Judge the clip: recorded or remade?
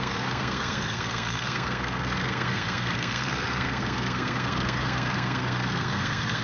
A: remade